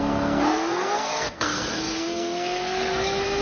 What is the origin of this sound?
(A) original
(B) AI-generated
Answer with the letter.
B